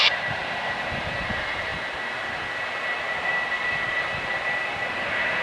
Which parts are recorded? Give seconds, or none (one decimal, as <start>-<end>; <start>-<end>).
1.7-4.9